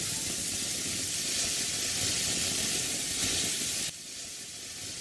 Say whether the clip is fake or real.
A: real